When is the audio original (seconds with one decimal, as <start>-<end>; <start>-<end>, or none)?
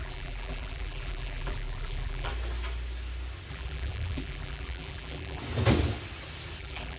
2.3-3.5; 5.4-6.6